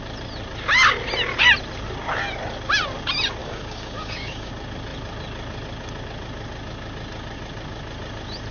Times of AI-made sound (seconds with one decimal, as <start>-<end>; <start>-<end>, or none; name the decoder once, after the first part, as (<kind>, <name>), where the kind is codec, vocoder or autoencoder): 3.4-4.5 (codec, DAC)